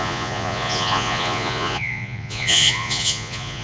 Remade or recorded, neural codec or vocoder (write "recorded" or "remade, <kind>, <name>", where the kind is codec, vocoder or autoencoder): remade, vocoder, Vocos